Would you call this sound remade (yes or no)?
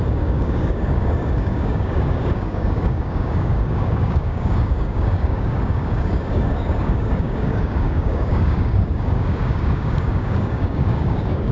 yes